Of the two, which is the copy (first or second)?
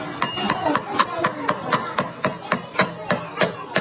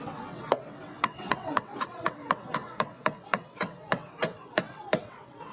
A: second